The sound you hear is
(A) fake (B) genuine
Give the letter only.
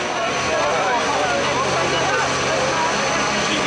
B